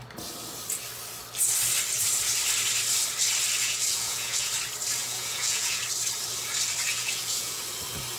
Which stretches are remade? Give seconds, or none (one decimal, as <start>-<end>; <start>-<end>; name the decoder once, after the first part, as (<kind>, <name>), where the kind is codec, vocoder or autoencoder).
3.6-4.5 (vocoder, Vocos); 5.0-5.8; 6.9-7.6